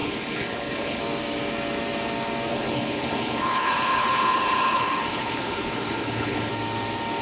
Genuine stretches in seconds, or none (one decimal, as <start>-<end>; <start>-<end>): 1.0-2.5; 6.5-7.2